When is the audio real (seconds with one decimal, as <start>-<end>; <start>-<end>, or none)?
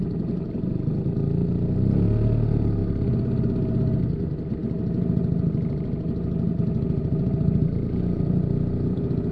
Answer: 0.0-9.3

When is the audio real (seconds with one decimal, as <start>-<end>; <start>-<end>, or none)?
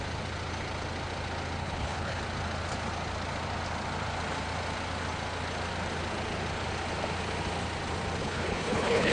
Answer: 0.0-1.6; 2.2-8.2